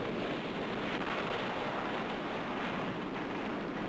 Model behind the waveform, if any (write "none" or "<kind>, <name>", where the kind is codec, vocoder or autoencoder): none